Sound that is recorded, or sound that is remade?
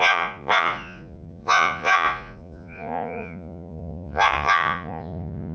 remade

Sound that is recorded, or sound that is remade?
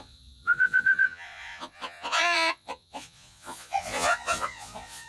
remade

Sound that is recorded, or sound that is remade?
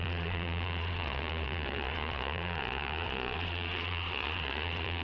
remade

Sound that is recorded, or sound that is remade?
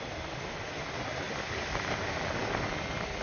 recorded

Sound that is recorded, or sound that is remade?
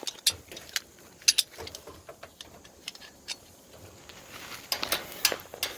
recorded